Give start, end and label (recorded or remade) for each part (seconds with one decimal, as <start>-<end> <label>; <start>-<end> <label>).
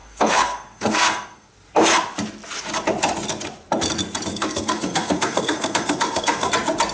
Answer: 0.0-1.5 remade; 1.5-4.3 recorded; 4.3-6.5 remade; 6.5-6.9 recorded